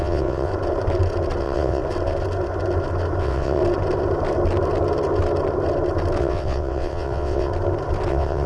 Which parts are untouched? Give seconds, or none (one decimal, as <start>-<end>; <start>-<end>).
0.5-1.4; 1.8-3.2; 3.6-6.2; 7.5-8.1